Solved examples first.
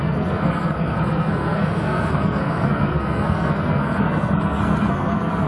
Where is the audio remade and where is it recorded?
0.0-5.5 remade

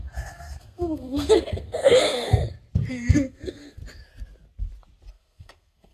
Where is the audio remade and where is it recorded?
0.0-2.4 remade; 2.4-2.9 recorded; 2.9-3.8 remade; 3.8-5.1 recorded; 5.1-5.9 remade

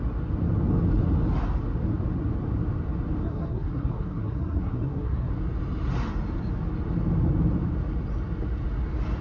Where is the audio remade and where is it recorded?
0.0-3.2 recorded; 3.2-5.3 remade; 5.3-9.2 recorded

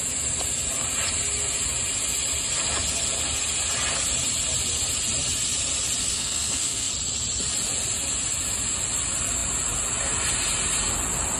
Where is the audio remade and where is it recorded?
0.0-6.0 recorded; 6.0-6.9 remade; 6.9-11.4 recorded

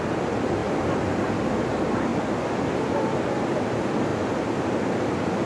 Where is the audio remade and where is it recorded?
0.0-5.5 recorded